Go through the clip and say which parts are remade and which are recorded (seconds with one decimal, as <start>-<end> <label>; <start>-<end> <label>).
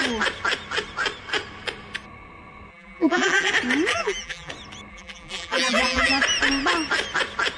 0.0-2.7 recorded; 2.7-3.5 remade; 3.5-3.9 recorded; 3.9-4.5 remade; 4.5-4.9 recorded; 4.9-6.1 remade; 6.1-7.6 recorded